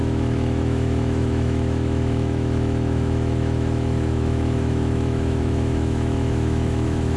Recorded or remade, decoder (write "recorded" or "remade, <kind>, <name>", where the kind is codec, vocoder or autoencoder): remade, autoencoder, DAC-VAE